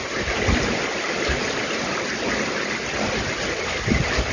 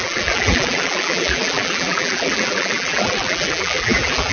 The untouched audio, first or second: first